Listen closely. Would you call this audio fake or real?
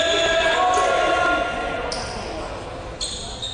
real